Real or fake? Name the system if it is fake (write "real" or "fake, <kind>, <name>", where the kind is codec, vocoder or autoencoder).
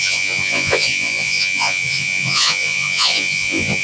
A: fake, vocoder, Vocos